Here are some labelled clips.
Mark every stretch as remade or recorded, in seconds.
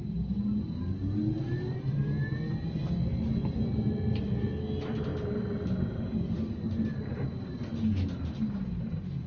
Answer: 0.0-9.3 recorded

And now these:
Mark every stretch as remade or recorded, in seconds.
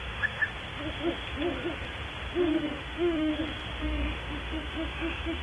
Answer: 0.0-0.4 remade; 0.4-2.5 recorded; 2.5-3.3 remade; 3.3-3.8 recorded; 3.8-5.4 remade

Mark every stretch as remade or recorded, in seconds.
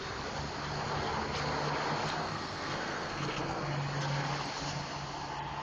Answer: 0.0-2.2 recorded; 2.2-3.6 remade; 3.6-5.6 recorded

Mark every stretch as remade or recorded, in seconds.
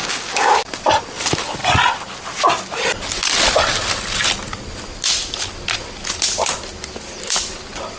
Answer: 0.0-0.7 remade; 0.7-8.0 recorded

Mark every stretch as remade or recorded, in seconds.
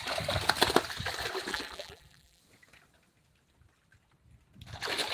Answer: 0.0-1.5 recorded; 1.5-2.4 remade; 2.4-5.1 recorded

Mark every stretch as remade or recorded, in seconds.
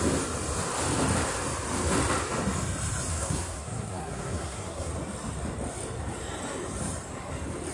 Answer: 0.0-3.1 recorded; 3.1-4.9 remade; 4.9-7.7 recorded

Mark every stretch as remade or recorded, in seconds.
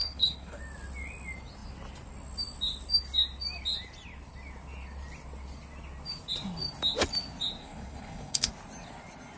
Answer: 0.0-0.6 remade; 0.6-7.6 recorded; 7.6-8.5 remade; 8.5-9.4 recorded